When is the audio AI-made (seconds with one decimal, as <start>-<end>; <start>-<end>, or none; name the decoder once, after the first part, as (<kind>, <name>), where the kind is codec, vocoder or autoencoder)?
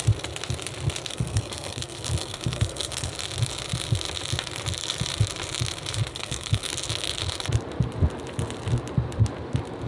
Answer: 1.1-3.1 (codec, SNAC); 6.1-6.7